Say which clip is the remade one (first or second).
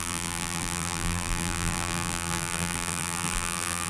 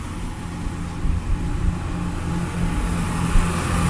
first